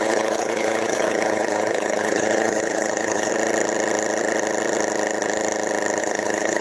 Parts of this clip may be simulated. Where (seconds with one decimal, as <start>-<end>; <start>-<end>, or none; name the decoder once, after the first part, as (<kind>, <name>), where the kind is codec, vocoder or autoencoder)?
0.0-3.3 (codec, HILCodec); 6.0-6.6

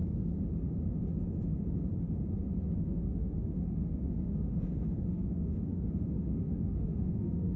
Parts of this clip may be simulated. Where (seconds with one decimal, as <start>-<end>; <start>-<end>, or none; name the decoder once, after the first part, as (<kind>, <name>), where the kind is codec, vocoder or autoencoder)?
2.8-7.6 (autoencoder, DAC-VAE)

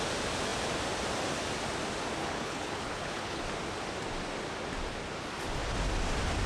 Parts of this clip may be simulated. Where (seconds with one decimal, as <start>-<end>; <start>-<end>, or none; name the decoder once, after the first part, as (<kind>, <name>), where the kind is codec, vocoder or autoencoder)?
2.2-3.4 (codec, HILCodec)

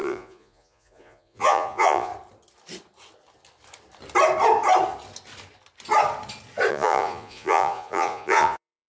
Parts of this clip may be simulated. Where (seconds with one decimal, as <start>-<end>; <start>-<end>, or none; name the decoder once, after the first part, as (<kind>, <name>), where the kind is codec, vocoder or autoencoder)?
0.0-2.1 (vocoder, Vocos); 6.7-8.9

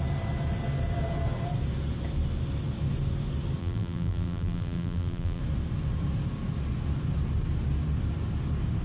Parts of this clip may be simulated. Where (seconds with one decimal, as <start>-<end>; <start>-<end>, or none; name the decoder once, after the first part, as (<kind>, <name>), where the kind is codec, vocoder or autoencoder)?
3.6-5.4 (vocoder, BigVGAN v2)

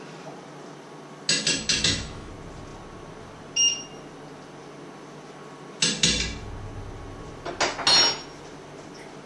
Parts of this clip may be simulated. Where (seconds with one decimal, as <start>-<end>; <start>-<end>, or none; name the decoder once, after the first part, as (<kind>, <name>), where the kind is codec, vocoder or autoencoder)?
1.7-2.3 (autoencoder, DAC-VAE)

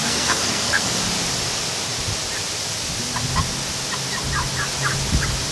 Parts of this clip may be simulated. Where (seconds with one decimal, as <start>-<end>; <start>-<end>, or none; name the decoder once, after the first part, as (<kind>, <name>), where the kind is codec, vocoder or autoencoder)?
0.0-1.0 (codec, SNAC)